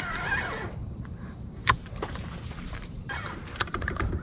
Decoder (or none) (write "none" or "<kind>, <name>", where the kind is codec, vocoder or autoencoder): vocoder, BigVGAN v2